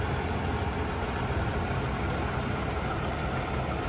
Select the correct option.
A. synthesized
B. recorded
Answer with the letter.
B